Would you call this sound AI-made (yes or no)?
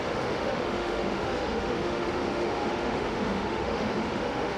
yes